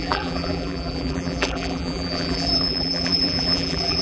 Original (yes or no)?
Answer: no